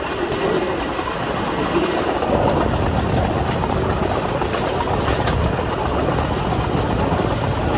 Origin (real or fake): real